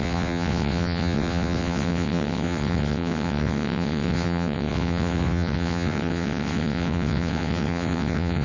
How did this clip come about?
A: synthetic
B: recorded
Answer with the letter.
A